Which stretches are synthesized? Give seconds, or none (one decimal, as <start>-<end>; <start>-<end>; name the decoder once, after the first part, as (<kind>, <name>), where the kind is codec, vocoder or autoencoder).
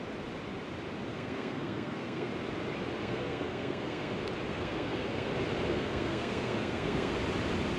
1.1-2.3 (codec, SNAC); 3.0-4.1; 4.5-5.3; 5.7-7.1